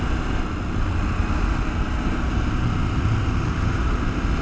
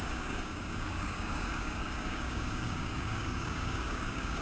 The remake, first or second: second